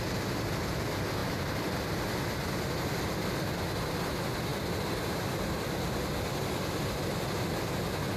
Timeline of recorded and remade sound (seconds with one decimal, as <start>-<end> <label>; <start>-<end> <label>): 0.0-1.2 recorded; 1.2-1.7 remade; 1.7-8.2 recorded